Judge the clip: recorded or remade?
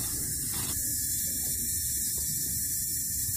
recorded